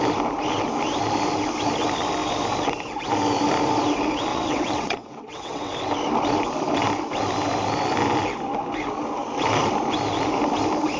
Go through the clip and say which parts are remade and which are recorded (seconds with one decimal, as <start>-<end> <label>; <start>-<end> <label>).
0.0-4.3 recorded; 4.3-5.7 remade; 5.7-11.0 recorded